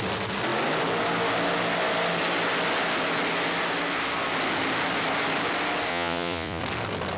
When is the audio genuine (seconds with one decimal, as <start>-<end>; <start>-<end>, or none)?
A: 0.0-5.9; 6.6-7.2